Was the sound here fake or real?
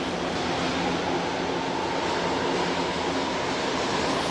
real